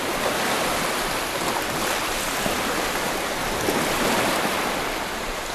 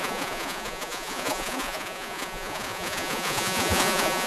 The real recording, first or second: first